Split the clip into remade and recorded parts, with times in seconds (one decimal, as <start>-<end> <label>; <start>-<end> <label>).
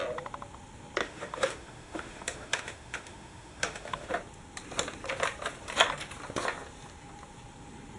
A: 0.0-1.0 recorded; 1.0-4.1 remade; 4.1-8.0 recorded